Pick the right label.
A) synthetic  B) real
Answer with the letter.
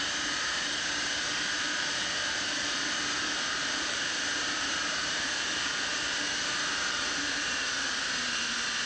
A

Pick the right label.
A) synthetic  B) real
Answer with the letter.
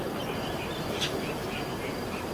A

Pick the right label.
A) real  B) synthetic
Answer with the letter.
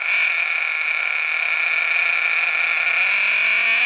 A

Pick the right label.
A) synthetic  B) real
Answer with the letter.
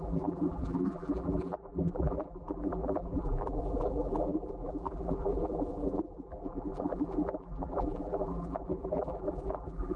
A